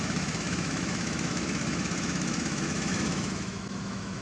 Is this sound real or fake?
fake